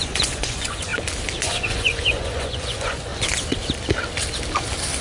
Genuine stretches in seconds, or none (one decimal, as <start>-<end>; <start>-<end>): 0.9-1.4; 3.1-5.0